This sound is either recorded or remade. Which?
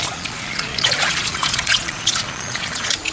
remade